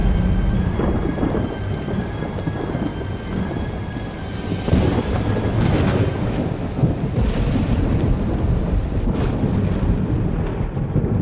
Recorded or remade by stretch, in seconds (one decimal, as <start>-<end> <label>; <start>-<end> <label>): 0.0-1.5 remade; 1.5-2.9 recorded; 2.9-4.4 remade; 4.4-6.8 recorded; 6.8-9.2 remade; 9.2-11.2 recorded